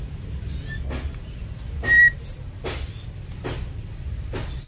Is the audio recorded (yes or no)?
yes